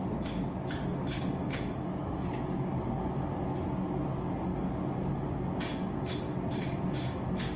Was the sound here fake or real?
real